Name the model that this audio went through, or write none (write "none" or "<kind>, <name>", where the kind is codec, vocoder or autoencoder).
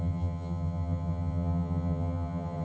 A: vocoder, HiFi-GAN